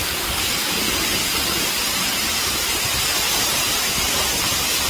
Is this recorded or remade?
recorded